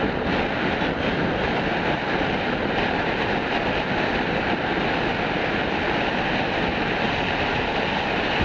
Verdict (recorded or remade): recorded